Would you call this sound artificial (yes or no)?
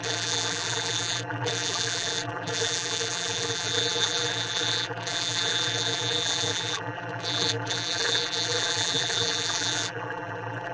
yes